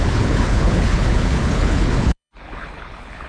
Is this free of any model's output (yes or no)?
no